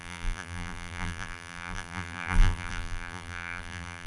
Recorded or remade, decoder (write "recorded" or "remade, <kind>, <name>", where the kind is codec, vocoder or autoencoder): remade, vocoder, BigVGAN v2